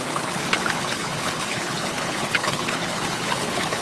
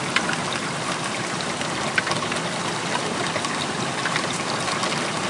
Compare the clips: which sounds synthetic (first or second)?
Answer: first